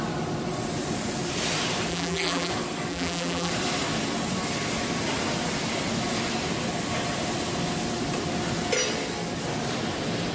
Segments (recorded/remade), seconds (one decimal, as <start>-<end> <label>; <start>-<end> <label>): 0.0-1.9 recorded; 1.9-2.5 remade; 2.5-2.9 recorded; 2.9-3.5 remade; 3.5-10.3 recorded